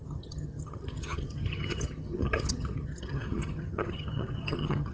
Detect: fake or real fake